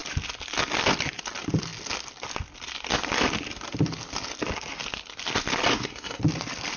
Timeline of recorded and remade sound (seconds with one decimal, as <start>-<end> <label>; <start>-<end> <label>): 0.0-5.7 recorded; 5.7-6.2 remade; 6.2-6.8 recorded